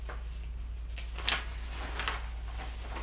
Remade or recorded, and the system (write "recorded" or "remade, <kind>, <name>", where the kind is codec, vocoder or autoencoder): recorded